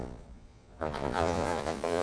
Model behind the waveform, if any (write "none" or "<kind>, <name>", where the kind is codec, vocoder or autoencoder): vocoder, Vocos